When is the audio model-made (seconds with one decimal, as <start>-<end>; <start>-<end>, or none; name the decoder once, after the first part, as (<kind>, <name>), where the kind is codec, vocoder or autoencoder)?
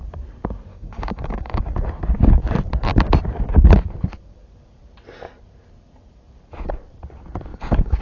0.7-1.6 (codec, DAC); 7.5-8.0